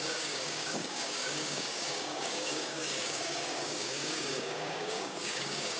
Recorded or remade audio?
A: remade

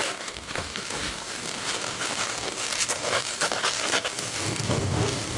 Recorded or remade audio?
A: remade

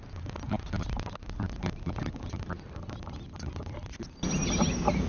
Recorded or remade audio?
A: recorded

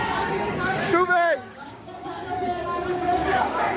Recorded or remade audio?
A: remade